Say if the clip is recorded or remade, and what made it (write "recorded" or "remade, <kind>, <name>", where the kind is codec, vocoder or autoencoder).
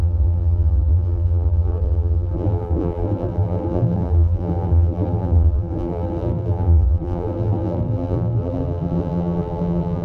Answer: remade, vocoder, BigVGAN v2